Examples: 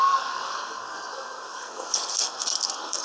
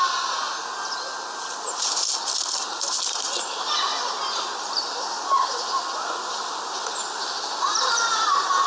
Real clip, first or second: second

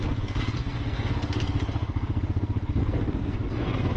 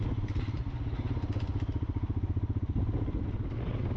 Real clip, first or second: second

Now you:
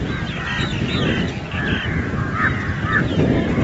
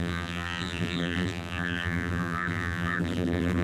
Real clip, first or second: first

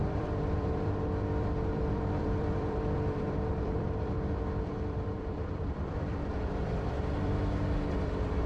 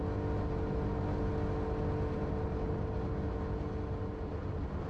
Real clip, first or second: second